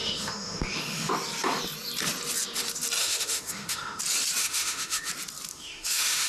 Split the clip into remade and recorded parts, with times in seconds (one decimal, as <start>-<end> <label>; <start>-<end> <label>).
0.0-1.1 remade; 1.1-3.0 recorded; 3.0-4.0 remade; 4.0-4.4 recorded; 4.4-5.1 remade; 5.1-5.5 recorded; 5.5-6.3 remade